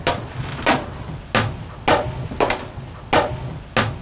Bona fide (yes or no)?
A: yes